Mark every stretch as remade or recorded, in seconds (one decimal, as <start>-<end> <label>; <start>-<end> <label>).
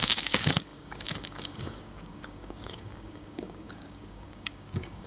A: 0.0-5.1 remade